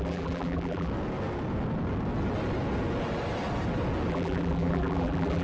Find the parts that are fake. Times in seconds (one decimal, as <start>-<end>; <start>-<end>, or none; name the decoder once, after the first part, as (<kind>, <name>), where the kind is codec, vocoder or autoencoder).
0.0-0.9 (vocoder, BigVGAN v2); 4.1-5.4